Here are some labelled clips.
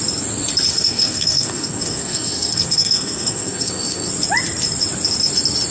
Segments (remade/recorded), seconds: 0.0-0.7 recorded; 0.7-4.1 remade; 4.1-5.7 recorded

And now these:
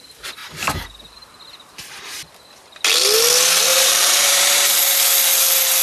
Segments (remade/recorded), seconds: 0.0-0.4 recorded; 0.4-1.3 remade; 1.3-3.7 recorded; 3.7-5.1 remade; 5.1-5.8 recorded

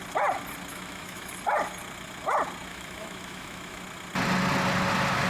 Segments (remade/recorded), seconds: 0.0-0.7 recorded; 0.7-1.3 remade; 1.3-2.7 recorded; 2.7-3.8 remade; 3.8-5.3 recorded

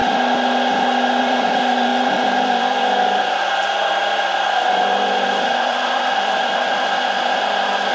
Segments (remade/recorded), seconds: 0.0-1.2 recorded; 1.2-7.9 remade

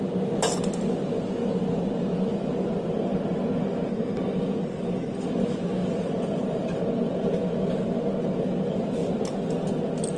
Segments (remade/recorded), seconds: 0.0-2.3 recorded; 2.3-5.3 remade; 5.3-5.8 recorded; 5.8-6.8 remade; 6.8-10.2 recorded

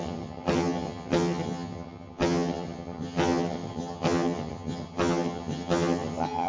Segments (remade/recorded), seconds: 0.0-6.5 remade